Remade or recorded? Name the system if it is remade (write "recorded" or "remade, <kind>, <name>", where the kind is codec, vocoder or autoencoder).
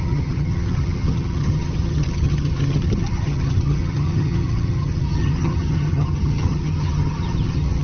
remade, vocoder, HiFi-GAN